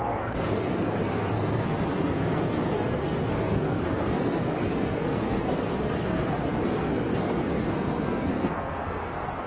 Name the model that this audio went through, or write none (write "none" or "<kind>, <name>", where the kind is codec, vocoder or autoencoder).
codec, SNAC